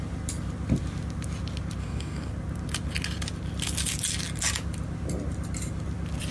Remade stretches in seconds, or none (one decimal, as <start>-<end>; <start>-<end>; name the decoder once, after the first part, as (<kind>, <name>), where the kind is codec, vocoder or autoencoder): 1.8-2.3 (codec, DAC)